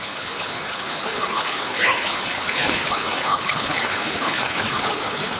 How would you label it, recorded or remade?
remade